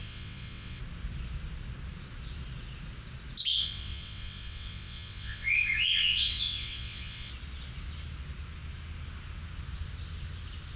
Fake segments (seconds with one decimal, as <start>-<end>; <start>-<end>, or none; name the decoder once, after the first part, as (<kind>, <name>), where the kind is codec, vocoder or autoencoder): 0.0-0.8 (vocoder, WaveNeXt); 3.5-7.3